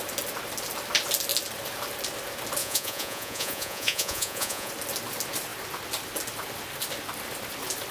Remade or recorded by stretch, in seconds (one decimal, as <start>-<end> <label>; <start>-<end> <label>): 0.0-2.6 recorded; 2.6-4.7 remade; 4.7-7.9 recorded